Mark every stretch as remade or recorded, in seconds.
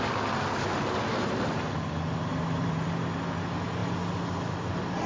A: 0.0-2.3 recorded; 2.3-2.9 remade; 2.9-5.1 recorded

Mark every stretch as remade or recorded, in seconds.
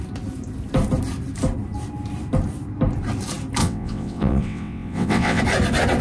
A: 0.0-3.6 recorded; 3.6-5.4 remade; 5.4-6.0 recorded